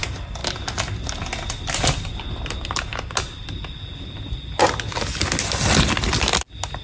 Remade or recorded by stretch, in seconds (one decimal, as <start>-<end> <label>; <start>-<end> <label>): 0.0-6.8 recorded